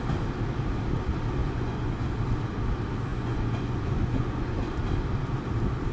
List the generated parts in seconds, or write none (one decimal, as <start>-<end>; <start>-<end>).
1.4-2.1; 3.1-4.8